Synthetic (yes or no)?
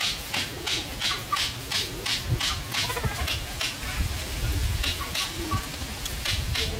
yes